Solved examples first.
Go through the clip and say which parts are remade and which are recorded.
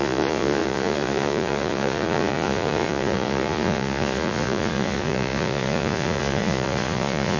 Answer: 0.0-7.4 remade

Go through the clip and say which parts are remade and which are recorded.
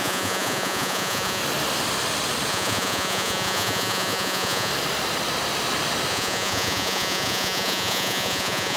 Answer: 0.0-1.4 remade; 1.4-2.5 recorded; 2.5-4.7 remade; 4.7-6.1 recorded; 6.1-8.8 remade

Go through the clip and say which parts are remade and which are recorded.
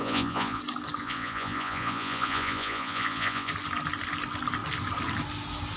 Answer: 0.0-0.6 remade; 0.6-1.0 recorded; 1.0-3.5 remade; 3.5-5.8 recorded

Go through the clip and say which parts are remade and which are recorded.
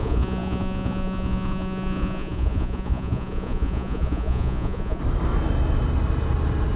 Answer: 0.0-5.0 remade; 5.0-6.8 recorded